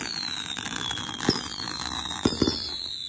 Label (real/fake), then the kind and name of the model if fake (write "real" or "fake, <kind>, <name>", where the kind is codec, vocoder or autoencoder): fake, vocoder, BigVGAN v2